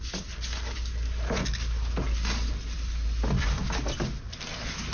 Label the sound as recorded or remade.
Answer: recorded